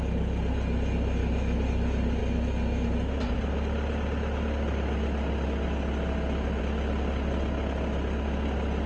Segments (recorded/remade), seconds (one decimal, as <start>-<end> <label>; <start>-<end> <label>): 0.0-1.2 recorded; 1.2-1.7 remade; 1.7-8.9 recorded